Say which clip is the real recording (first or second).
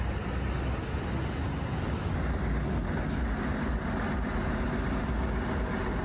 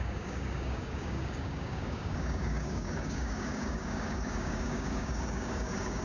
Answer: first